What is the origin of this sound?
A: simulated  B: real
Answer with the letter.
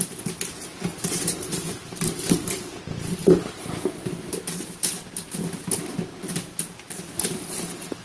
A